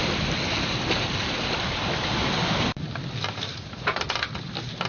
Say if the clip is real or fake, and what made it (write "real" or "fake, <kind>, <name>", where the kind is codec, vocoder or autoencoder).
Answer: real